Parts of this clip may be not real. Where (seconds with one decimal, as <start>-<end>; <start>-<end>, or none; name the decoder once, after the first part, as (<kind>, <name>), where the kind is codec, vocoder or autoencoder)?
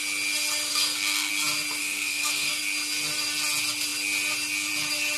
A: 0.7-1.3 (codec, SNAC); 1.8-2.6